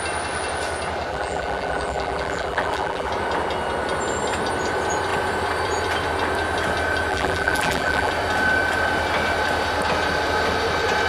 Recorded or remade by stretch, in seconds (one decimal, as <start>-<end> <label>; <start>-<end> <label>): 0.0-1.1 recorded; 1.1-3.1 remade; 3.1-7.1 recorded; 7.1-8.1 remade; 8.1-11.1 recorded